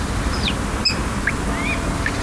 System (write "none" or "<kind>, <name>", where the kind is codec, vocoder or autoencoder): none